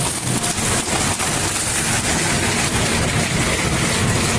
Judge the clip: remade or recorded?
recorded